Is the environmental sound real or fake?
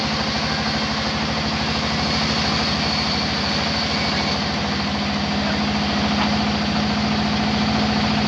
real